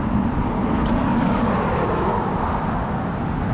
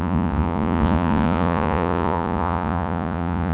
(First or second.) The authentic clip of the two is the first